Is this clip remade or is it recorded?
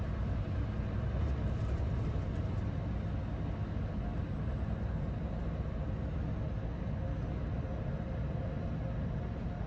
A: recorded